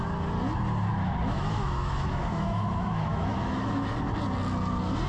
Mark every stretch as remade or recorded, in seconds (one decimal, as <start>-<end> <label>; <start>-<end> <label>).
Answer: 0.0-0.9 recorded; 0.9-4.0 remade; 4.0-5.1 recorded